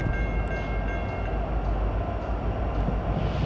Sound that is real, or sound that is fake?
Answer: real